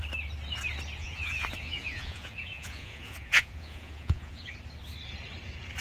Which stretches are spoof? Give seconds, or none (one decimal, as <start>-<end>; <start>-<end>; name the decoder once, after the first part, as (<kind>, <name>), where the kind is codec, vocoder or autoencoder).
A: 1.0-4.5 (vocoder, Vocos)